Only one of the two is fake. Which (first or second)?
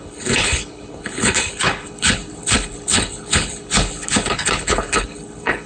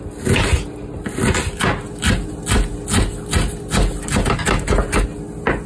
first